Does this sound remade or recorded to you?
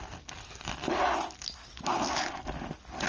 recorded